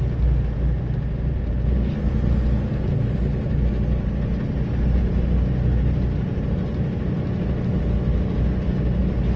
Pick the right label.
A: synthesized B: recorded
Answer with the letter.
B